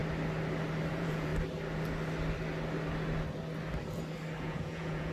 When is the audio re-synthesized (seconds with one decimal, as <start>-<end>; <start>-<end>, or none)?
0.9-1.3; 4.4-5.1